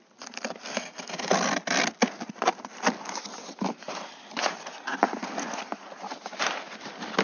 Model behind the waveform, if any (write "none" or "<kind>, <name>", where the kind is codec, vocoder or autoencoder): none